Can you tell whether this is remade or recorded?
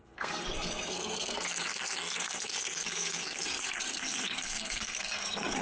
remade